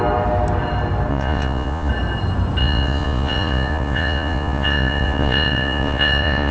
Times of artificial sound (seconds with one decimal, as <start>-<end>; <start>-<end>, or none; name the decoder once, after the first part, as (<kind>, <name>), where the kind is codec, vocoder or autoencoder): 1.1-1.9 (vocoder, Vocos); 2.6-6.5